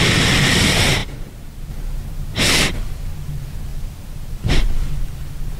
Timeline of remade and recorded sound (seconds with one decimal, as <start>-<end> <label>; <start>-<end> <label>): 0.0-1.0 recorded; 1.0-1.7 remade; 1.7-3.7 recorded; 3.7-4.6 remade; 4.6-5.6 recorded